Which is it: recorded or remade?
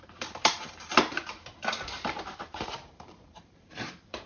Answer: remade